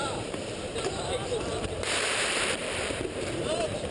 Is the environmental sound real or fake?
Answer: fake